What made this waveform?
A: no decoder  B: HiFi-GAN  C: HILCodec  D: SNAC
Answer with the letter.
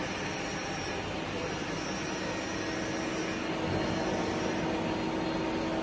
A